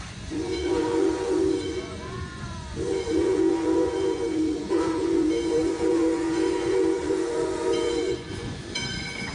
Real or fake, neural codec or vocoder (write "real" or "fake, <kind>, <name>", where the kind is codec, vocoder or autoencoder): fake, vocoder, Vocos